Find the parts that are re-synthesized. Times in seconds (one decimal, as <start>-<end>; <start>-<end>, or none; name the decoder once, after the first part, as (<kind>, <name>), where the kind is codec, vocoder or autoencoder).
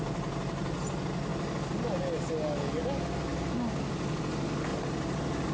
4.7-5.5 (vocoder, BigVGAN v2)